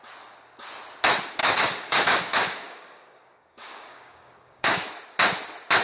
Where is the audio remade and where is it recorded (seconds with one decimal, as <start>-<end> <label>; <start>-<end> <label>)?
0.0-1.4 recorded; 1.4-4.9 remade; 4.9-5.8 recorded